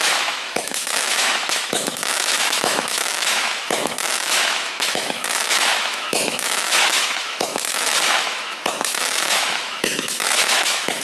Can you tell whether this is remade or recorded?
remade